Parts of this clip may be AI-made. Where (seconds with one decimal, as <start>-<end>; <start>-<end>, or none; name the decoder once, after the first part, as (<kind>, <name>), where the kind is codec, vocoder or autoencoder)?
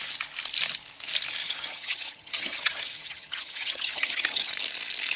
1.4-4.5 (vocoder, HiFi-GAN)